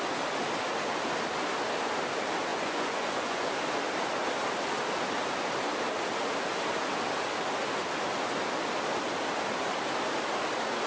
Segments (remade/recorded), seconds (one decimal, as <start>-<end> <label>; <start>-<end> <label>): 0.0-2.5 recorded; 2.5-3.5 remade; 3.5-10.9 recorded